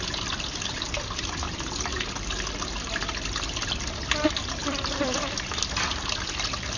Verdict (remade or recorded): recorded